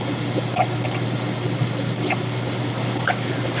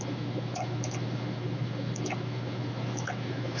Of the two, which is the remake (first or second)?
second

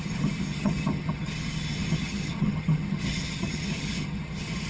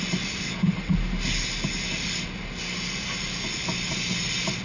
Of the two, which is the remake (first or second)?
first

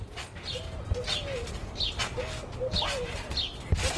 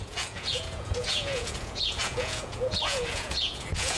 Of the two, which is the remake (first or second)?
second